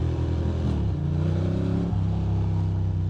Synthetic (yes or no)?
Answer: no